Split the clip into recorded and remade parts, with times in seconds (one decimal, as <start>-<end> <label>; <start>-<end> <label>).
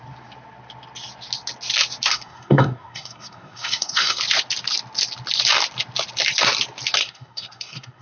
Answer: 0.0-2.1 recorded; 2.1-4.2 remade; 4.2-7.0 recorded; 7.0-8.0 remade